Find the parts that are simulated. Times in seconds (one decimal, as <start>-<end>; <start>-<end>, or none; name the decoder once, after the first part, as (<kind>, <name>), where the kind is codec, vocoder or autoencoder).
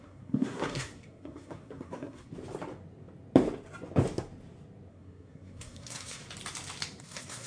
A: 0.0-2.3 (codec, SNAC); 4.9-6.2; 7.0-7.5